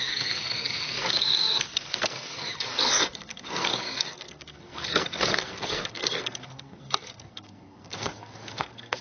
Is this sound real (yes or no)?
no